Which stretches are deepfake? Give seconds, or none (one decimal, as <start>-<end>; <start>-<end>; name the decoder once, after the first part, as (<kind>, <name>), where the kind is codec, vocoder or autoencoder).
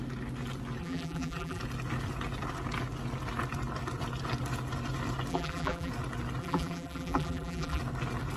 0.8-1.6 (vocoder, BigVGAN v2); 5.3-5.9; 6.4-7.8